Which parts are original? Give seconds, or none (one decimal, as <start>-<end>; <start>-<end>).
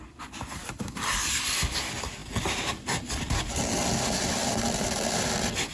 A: 0.0-0.6; 1.3-4.4; 5.3-5.7